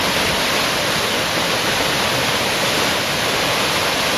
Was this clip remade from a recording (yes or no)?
no